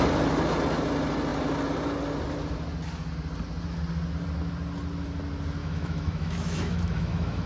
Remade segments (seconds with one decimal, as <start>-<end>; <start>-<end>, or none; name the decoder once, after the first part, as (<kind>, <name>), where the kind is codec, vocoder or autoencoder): 5.6-7.5 (autoencoder, DAC-VAE)

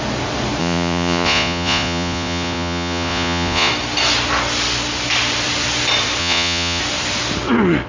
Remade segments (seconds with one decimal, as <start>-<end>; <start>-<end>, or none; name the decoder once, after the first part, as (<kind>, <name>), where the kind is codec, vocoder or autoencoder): 0.6-3.7 (vocoder, Vocos); 6.2-6.8